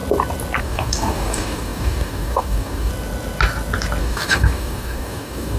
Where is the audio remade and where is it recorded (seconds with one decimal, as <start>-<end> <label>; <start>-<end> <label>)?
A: 0.0-0.6 recorded; 0.6-2.9 remade; 2.9-4.0 recorded; 4.0-5.6 remade